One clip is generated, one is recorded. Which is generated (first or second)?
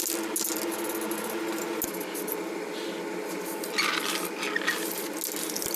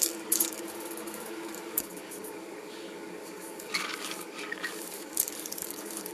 second